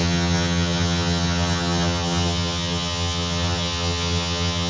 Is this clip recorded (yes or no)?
no